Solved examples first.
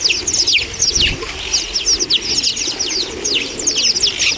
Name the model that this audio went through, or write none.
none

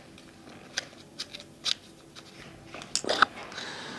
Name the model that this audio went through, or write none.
none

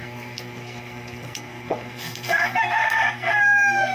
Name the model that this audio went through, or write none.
codec, SNAC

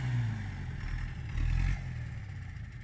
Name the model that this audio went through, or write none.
none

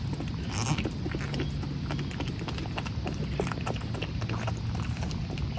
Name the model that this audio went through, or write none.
none